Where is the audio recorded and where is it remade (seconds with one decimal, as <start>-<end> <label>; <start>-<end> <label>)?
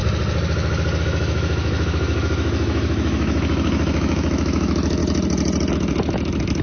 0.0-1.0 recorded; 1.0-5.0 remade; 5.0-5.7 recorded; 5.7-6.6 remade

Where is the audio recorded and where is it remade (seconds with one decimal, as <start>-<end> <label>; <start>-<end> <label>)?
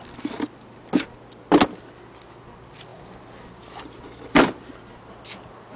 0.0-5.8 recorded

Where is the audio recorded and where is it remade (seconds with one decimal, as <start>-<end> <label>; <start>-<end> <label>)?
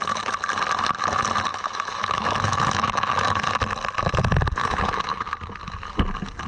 0.0-1.5 recorded; 1.5-3.5 remade; 3.5-4.6 recorded; 4.6-5.3 remade; 5.3-6.5 recorded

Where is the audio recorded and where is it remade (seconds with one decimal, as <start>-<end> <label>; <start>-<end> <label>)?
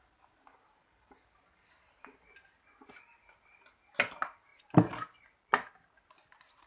0.0-6.7 recorded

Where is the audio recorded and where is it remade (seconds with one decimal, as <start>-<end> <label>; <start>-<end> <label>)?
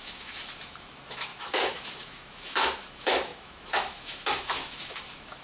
0.0-5.4 remade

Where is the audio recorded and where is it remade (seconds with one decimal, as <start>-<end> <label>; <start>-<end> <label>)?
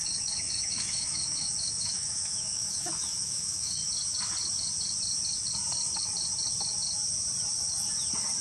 0.0-3.8 remade; 3.8-8.4 recorded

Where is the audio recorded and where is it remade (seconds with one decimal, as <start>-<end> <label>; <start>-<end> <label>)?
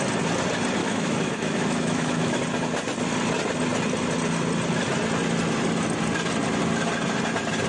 0.0-0.8 recorded; 0.8-2.4 remade; 2.4-7.7 recorded